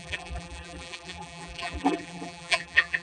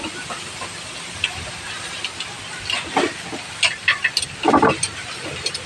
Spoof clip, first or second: first